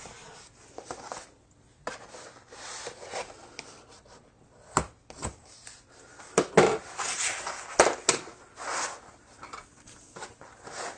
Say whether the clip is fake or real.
real